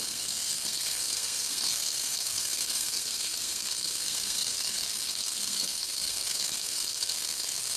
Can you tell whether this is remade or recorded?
remade